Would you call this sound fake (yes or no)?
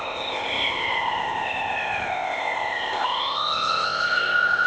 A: yes